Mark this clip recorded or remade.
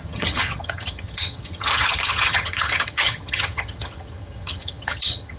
remade